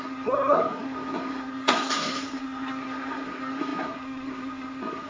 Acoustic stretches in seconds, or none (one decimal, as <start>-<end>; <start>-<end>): none